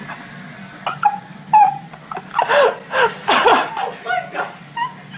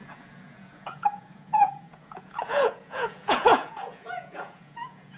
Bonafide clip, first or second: first